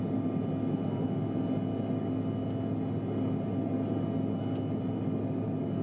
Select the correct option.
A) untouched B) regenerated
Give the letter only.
A